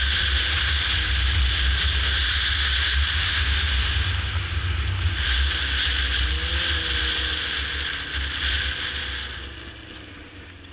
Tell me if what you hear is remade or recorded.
recorded